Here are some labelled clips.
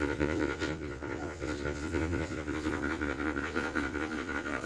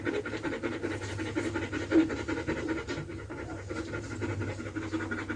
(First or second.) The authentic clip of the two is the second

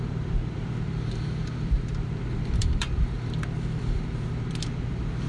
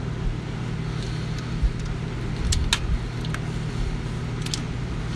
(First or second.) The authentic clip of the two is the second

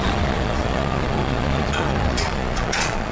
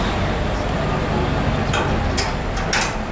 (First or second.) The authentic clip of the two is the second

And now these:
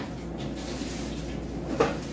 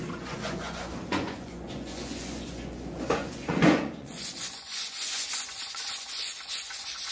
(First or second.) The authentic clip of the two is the first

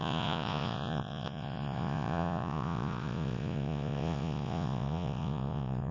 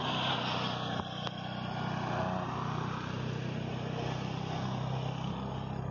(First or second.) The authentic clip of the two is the second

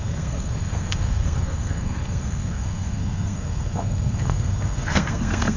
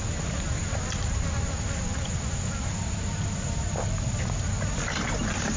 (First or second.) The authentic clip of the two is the second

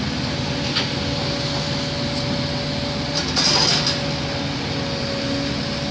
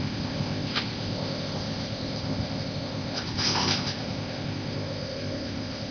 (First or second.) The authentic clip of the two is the first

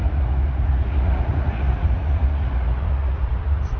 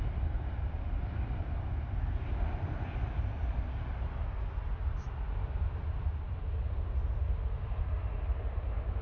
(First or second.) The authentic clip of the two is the second